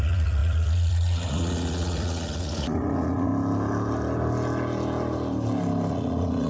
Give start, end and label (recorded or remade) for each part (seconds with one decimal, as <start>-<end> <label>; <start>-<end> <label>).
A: 0.0-3.3 remade; 3.3-5.9 recorded; 5.9-6.5 remade